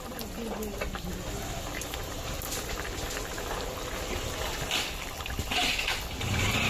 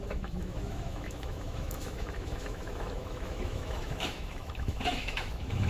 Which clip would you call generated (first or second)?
second